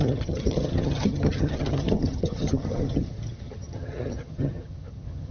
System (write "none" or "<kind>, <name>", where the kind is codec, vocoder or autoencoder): vocoder, HiFi-GAN